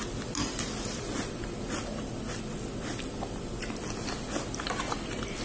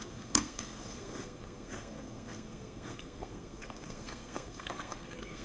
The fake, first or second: second